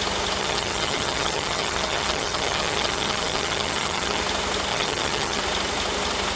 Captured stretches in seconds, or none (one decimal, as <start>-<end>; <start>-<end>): 0.0-0.4; 4.2-4.7; 5.4-6.4